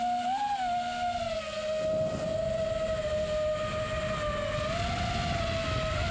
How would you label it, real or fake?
real